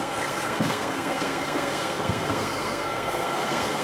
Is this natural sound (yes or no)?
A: no